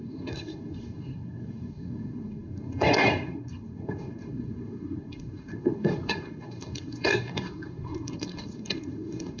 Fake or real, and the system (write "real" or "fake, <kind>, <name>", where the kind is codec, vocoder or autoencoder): fake, codec, SNAC